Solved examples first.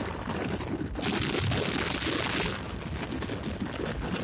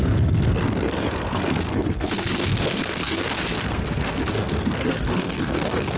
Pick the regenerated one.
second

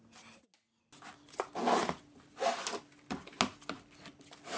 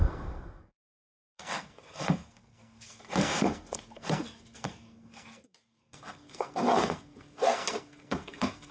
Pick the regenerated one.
second